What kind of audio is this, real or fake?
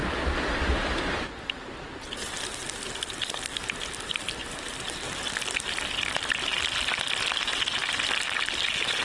real